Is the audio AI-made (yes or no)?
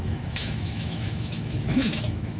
yes